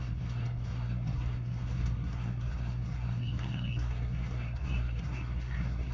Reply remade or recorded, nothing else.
remade